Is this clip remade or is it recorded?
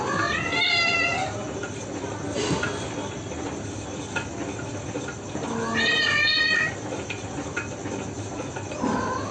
recorded